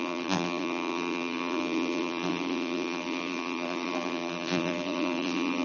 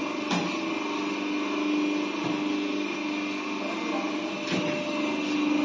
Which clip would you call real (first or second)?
second